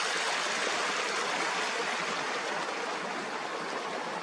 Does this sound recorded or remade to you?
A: recorded